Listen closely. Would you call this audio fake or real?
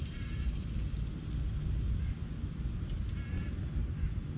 real